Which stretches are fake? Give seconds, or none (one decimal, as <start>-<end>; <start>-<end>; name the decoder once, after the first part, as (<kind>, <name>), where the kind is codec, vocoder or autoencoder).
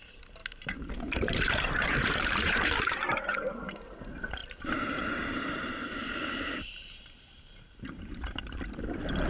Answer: 0.4-3.7 (vocoder, BigVGAN v2); 4.4-8.2